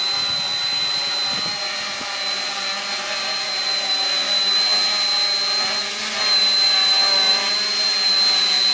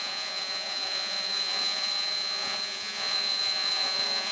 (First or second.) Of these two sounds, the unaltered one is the first